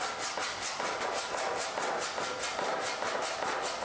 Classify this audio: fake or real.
real